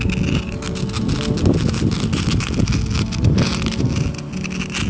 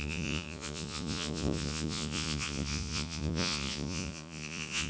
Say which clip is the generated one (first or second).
second